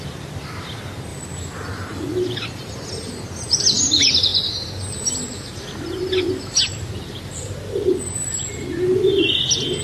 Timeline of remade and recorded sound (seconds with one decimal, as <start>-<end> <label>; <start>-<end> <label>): 0.0-1.1 recorded; 1.1-3.1 remade; 3.1-9.8 recorded